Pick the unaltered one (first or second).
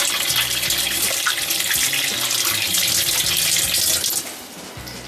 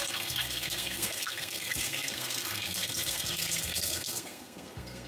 first